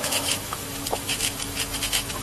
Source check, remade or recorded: remade